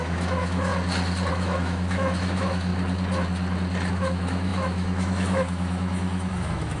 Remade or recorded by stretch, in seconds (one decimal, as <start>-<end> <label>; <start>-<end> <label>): 0.0-0.7 remade; 0.7-1.3 recorded; 1.3-2.7 remade; 2.7-3.9 recorded; 3.9-6.8 remade